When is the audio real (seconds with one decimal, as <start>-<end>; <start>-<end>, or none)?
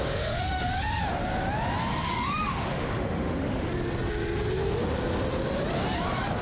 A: 0.6-1.9; 3.7-6.4